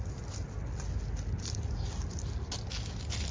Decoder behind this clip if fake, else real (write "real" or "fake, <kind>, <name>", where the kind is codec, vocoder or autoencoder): real